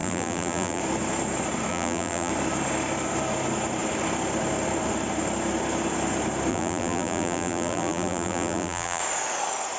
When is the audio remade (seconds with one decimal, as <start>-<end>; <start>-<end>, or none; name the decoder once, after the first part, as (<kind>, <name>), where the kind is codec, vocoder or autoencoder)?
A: 0.0-0.8 (vocoder, BigVGAN v2); 1.7-2.3; 6.5-9.0